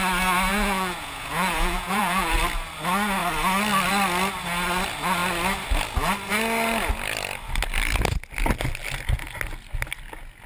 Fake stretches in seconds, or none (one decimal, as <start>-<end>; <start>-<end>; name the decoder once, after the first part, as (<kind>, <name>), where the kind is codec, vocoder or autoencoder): 0.5-2.4 (vocoder, Vocos)